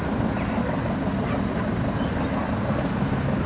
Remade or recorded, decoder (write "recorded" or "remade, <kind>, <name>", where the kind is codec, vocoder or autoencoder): recorded